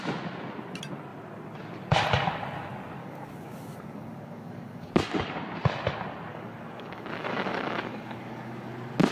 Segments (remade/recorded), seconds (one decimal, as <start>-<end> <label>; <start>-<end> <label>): 0.0-3.0 recorded; 3.0-4.9 remade; 4.9-6.3 recorded; 6.3-8.7 remade; 8.7-9.1 recorded